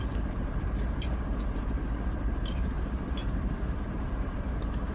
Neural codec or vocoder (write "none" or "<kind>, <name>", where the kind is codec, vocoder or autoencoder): vocoder, BigVGAN v2